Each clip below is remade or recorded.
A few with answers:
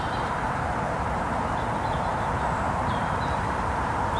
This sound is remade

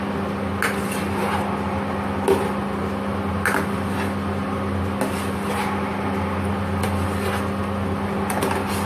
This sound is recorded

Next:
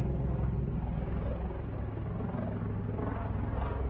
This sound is recorded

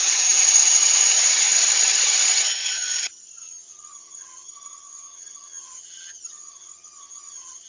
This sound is remade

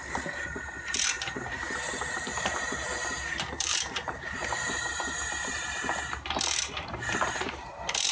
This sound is remade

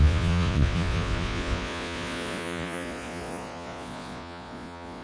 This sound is remade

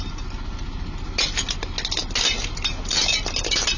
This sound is recorded